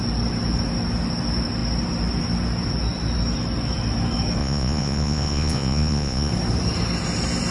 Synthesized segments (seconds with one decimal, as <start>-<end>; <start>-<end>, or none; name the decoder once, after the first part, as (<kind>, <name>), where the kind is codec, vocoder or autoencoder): 4.4-6.3 (vocoder, Vocos)